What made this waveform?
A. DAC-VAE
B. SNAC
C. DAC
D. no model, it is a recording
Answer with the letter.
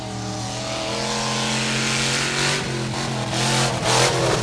D